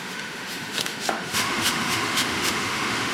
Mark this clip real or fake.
fake